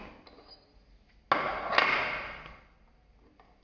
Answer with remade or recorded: recorded